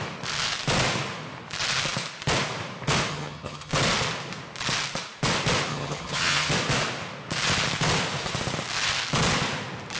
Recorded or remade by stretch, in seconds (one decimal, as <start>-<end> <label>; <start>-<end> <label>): 0.0-3.1 recorded; 3.1-3.7 remade; 3.7-5.7 recorded; 5.7-6.5 remade; 6.5-10.0 recorded